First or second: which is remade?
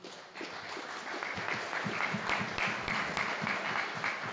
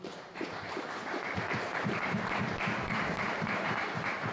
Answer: second